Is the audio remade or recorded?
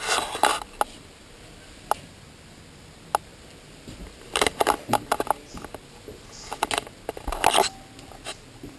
recorded